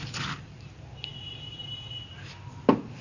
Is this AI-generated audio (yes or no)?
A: no